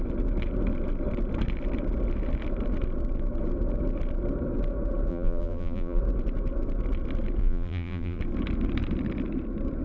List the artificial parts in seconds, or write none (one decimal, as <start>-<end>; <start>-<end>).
5.1-6.0; 7.4-8.2